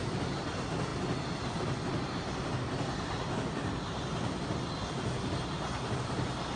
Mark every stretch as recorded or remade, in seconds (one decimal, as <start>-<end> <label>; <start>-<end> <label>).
0.0-6.6 recorded

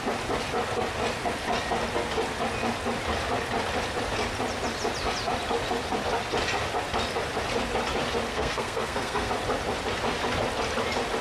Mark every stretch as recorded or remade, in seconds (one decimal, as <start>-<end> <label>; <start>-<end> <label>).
0.0-8.3 recorded; 8.3-9.3 remade; 9.3-11.2 recorded

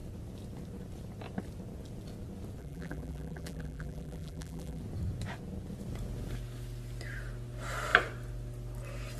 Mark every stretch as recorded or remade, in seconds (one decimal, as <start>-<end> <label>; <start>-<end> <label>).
0.0-2.6 recorded; 2.6-4.8 remade; 4.8-9.2 recorded

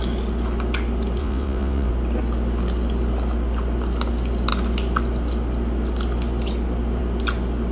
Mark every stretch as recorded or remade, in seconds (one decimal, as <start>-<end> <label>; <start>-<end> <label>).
0.0-1.2 recorded; 1.2-1.9 remade; 1.9-7.7 recorded